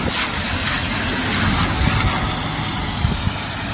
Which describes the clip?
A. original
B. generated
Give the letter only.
A